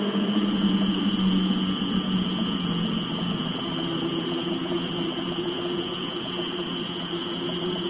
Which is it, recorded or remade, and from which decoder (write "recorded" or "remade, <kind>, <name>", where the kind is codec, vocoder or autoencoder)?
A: remade, vocoder, Vocos